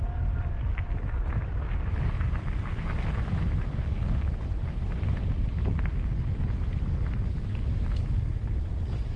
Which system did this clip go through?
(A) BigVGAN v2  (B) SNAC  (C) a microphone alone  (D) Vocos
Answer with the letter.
C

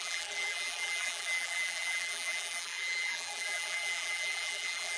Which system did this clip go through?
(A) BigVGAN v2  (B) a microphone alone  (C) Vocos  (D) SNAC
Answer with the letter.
A